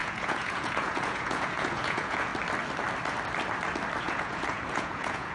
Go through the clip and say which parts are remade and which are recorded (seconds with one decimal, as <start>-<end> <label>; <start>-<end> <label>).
0.0-2.3 remade; 2.3-4.0 recorded; 4.0-5.3 remade